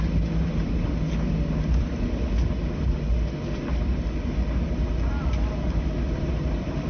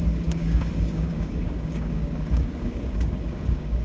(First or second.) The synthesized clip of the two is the second